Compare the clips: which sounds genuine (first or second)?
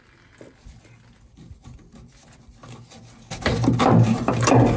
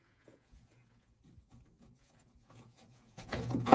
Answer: first